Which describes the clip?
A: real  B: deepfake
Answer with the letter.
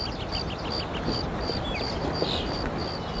A